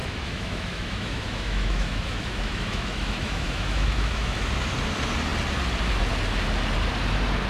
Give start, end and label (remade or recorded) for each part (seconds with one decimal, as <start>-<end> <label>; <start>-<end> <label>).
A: 0.0-4.5 remade; 4.5-7.5 recorded